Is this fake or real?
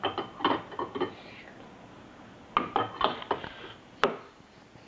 real